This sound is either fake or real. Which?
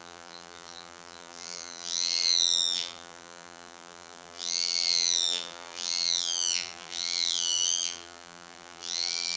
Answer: fake